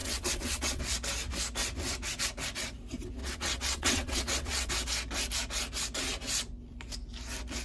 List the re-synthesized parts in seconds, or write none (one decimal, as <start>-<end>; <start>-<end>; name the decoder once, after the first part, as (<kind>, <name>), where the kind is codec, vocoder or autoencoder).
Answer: 0.0-0.8 (vocoder, WaveNeXt); 3.2-4.7